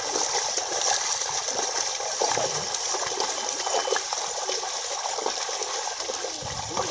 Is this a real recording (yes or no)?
no